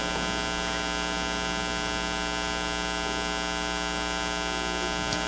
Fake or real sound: real